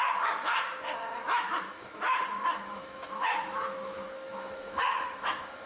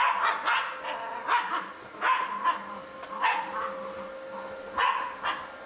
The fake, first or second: first